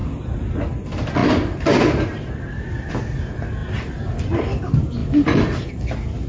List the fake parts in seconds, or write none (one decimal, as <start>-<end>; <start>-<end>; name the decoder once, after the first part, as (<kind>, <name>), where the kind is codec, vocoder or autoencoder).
0.0-0.5 (vocoder, BigVGAN v2); 3.6-4.4; 5.0-5.7